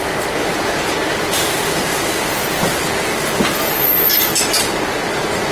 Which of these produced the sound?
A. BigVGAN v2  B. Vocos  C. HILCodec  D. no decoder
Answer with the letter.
D